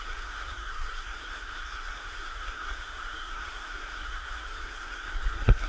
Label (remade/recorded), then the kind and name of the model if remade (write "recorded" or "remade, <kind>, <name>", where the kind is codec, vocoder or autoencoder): remade, codec, SNAC